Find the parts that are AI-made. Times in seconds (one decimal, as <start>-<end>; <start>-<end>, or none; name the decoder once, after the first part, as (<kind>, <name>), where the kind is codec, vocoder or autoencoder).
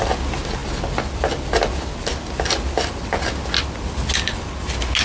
none